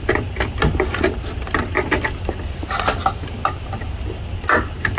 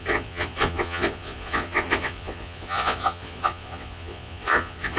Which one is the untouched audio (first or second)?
first